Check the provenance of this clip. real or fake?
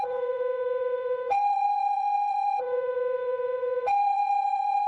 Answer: fake